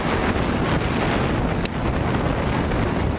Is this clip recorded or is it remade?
recorded